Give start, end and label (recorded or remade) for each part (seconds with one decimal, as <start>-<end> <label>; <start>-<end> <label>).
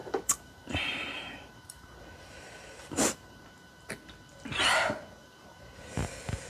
0.0-3.9 remade; 3.9-5.2 recorded; 5.2-5.9 remade; 5.9-6.5 recorded